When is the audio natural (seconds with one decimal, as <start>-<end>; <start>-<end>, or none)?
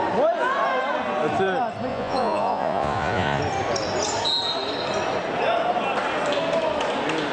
0.0-1.9; 3.4-7.3